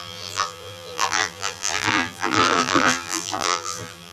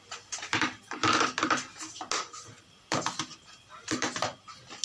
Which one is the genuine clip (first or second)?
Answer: second